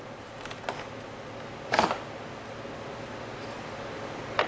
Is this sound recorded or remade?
recorded